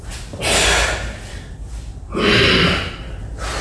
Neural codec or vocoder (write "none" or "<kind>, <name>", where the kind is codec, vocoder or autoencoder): none